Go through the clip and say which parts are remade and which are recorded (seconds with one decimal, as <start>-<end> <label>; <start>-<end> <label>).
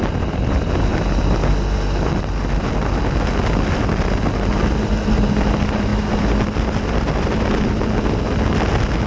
0.0-5.9 recorded; 5.9-7.8 remade; 7.8-9.1 recorded